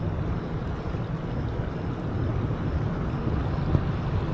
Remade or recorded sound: recorded